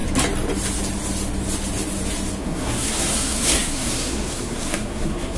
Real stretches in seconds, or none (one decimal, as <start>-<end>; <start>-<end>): 0.0-2.4